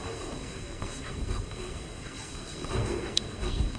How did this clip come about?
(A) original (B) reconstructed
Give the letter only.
B